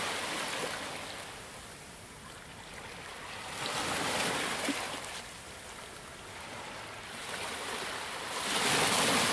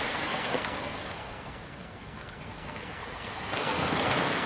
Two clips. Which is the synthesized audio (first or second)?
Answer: second